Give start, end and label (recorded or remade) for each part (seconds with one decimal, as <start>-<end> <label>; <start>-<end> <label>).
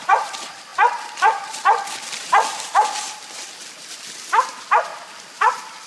0.0-5.9 recorded